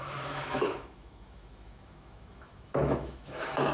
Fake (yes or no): yes